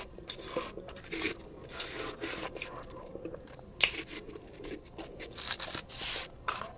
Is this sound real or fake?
real